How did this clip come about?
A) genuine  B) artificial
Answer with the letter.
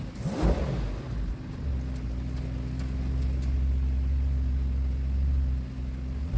A